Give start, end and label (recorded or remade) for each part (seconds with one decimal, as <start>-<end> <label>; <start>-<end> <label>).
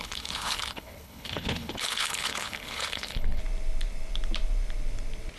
0.0-3.4 remade; 3.4-5.4 recorded